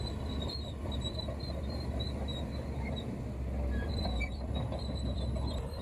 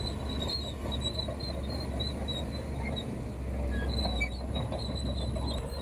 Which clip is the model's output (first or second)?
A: first